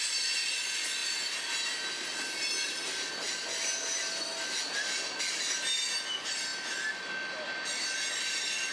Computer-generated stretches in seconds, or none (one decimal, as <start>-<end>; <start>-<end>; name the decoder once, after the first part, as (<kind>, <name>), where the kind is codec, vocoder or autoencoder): none